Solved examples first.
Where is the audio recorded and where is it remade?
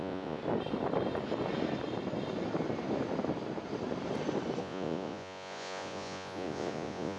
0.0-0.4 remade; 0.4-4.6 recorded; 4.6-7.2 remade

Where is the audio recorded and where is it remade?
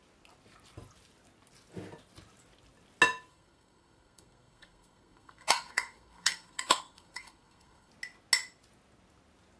0.0-3.3 recorded; 3.3-7.9 remade; 7.9-9.6 recorded